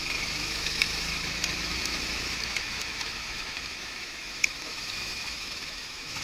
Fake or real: fake